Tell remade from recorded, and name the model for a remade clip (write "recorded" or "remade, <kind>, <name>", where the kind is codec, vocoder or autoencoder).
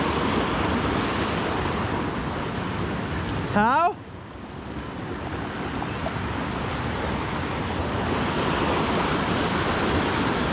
recorded